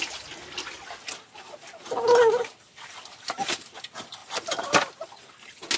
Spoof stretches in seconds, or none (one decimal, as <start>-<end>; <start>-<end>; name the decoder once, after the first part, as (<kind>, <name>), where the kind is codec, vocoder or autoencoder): none